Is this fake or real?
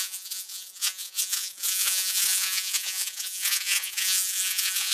fake